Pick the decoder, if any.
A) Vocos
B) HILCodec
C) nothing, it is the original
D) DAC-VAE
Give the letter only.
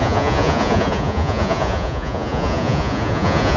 A